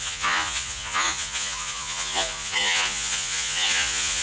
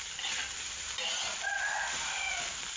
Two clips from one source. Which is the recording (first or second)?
second